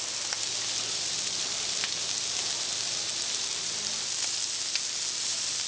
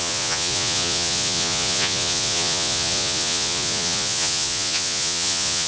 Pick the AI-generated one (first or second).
second